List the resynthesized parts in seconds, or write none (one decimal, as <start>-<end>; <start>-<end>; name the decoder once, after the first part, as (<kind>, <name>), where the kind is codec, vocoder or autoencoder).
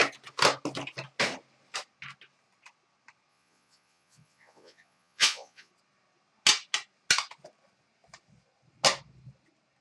3.3-5.7 (vocoder, Vocos)